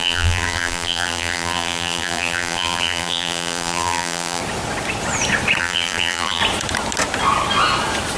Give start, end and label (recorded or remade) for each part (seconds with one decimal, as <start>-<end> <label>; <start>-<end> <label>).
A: 0.0-4.4 remade; 4.4-5.6 recorded; 5.6-6.4 remade; 6.4-8.2 recorded